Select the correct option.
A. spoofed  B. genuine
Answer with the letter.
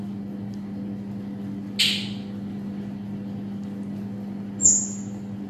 B